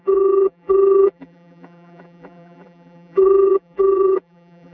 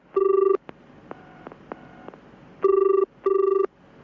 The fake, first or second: first